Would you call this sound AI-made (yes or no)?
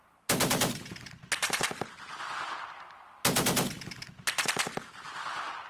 no